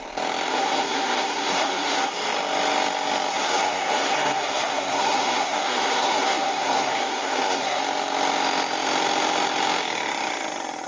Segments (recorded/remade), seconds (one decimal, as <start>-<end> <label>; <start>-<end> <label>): 0.0-0.5 recorded; 0.5-2.1 remade; 2.1-3.3 recorded; 3.3-7.8 remade; 7.8-10.9 recorded